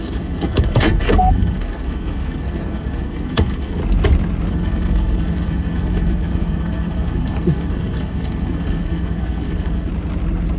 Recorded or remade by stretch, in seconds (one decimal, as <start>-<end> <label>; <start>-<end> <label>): 0.0-3.8 remade; 3.8-4.5 recorded; 4.5-9.9 remade; 9.9-10.6 recorded